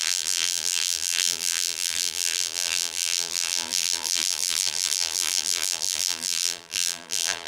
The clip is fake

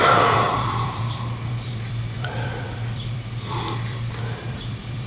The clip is fake